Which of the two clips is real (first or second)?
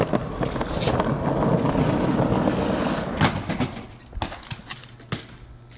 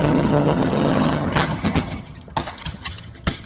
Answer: first